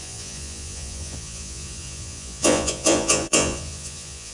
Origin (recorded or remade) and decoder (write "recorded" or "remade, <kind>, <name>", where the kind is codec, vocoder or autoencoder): remade, vocoder, Vocos